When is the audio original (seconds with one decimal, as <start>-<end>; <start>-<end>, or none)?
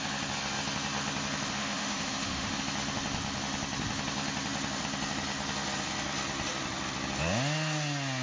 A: 0.0-1.6; 2.6-8.2